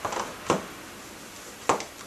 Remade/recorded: recorded